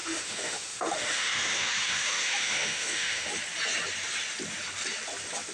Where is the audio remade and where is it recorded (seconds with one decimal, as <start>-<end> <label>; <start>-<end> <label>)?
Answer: 0.0-3.3 remade; 3.3-5.5 recorded

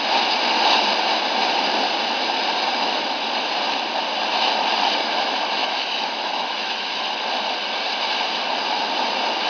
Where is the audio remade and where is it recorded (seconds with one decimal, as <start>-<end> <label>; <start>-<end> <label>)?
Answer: 0.0-5.6 recorded; 5.6-7.1 remade; 7.1-9.5 recorded

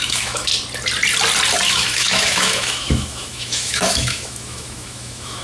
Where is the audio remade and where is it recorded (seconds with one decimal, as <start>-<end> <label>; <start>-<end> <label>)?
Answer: 0.0-0.5 remade; 0.5-1.7 recorded; 1.7-5.4 remade

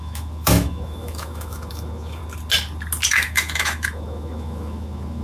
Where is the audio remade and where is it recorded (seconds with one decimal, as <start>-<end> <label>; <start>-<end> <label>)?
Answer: 0.0-2.2 remade; 2.2-3.1 recorded; 3.1-5.2 remade